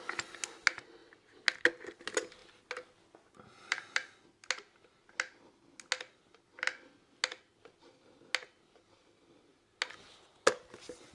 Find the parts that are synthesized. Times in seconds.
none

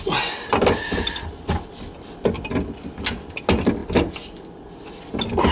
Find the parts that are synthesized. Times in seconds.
none

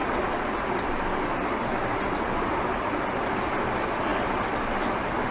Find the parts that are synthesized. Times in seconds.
4.1-4.7 (vocoder, BigVGAN v2)

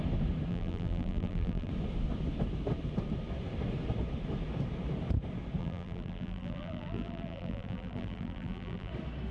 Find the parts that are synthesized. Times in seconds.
0.5-1.7 (vocoder, BigVGAN v2); 5.6-8.9

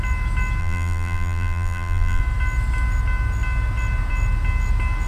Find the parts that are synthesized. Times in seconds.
0.6-2.2 (vocoder, BigVGAN v2)

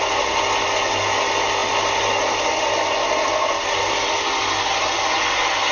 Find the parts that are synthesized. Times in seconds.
none

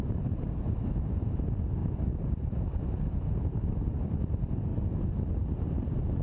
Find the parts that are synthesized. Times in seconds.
0.0-4.7 (vocoder, BigVGAN v2)

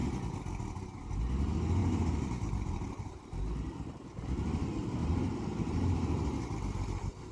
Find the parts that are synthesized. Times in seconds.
1.8-3.2 (vocoder, BigVGAN v2); 5.0-6.4